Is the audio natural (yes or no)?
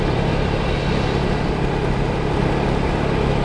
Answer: no